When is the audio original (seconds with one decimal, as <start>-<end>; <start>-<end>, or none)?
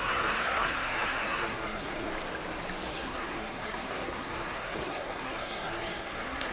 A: 2.1-2.9